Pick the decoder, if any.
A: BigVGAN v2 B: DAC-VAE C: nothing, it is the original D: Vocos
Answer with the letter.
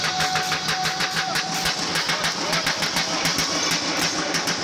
C